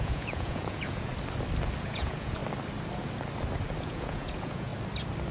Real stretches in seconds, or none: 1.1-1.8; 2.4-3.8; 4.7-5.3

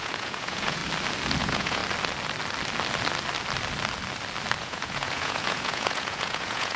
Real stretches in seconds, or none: 0.8-1.4; 1.8-4.6